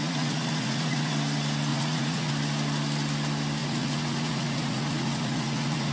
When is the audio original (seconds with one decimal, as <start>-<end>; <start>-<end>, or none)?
1.1-1.7; 2.3-3.6